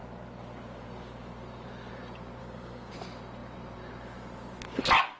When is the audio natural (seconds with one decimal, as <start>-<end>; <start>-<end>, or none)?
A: 0.0-2.4; 2.9-5.2